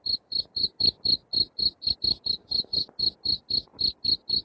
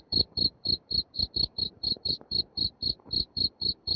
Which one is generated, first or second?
second